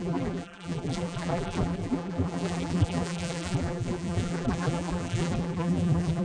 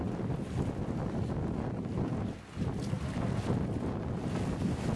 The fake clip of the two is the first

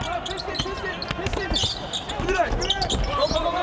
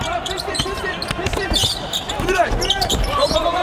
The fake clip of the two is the second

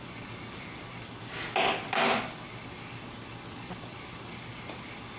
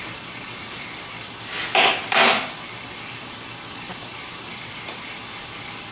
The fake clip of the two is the second